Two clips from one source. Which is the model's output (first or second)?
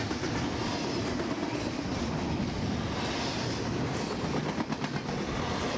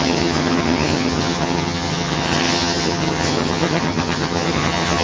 second